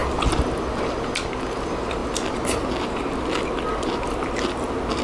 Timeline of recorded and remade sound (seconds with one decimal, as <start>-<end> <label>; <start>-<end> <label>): 0.0-5.0 recorded